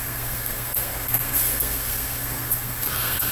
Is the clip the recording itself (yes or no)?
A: no